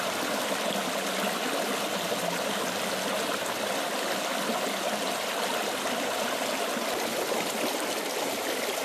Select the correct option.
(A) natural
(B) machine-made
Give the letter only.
A